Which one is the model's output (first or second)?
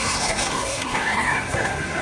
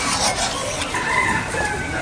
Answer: first